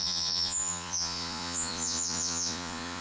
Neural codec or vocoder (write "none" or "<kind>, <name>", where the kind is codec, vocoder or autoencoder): vocoder, Vocos